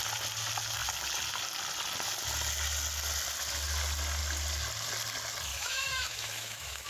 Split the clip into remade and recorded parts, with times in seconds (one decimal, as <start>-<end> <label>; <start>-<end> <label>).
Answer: 0.0-5.5 recorded; 5.5-6.9 remade